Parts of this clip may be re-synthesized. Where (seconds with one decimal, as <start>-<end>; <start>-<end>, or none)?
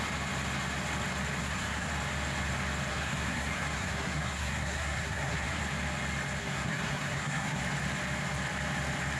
1.4-1.9; 2.9-5.6; 6.4-7.6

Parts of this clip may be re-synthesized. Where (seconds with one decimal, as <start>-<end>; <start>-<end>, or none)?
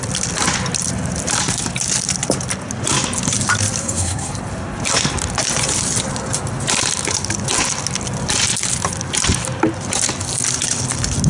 3.8-4.3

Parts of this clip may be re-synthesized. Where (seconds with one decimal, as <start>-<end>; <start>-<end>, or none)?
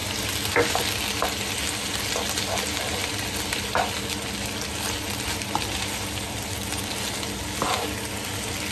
none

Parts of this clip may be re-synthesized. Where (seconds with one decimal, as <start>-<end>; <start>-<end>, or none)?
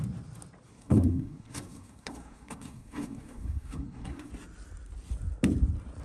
0.7-4.3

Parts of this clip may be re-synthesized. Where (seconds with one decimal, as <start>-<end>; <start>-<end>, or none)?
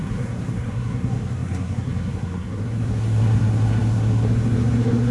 0.0-5.1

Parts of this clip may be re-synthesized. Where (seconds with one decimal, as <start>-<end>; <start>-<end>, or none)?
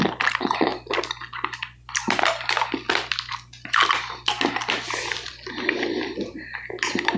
none